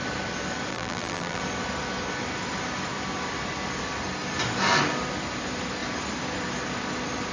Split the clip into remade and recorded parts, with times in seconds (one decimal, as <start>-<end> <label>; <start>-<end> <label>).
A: 0.0-0.7 recorded; 0.7-1.4 remade; 1.4-7.3 recorded